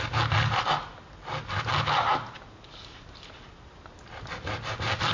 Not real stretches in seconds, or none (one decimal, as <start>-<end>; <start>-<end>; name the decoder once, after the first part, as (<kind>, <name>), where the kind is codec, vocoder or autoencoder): none